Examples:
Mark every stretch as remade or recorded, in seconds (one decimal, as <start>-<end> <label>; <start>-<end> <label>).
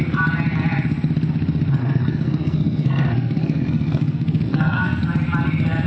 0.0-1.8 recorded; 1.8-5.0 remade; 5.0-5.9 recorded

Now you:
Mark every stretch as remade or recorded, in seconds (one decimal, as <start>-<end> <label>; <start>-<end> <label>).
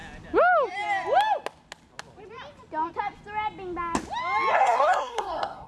0.0-4.5 recorded; 4.5-5.7 remade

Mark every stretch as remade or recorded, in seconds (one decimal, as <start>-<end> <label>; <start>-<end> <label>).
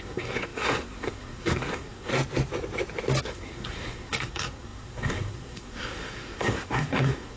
0.0-2.1 remade; 2.1-3.2 recorded; 3.2-7.4 remade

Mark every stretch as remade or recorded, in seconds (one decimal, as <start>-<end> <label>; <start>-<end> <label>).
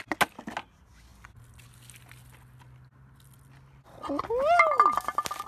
0.0-5.5 recorded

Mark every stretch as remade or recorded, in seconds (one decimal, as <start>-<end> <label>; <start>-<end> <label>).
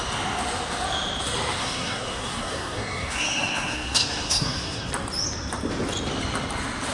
0.0-1.6 recorded; 1.6-4.9 remade; 4.9-6.9 recorded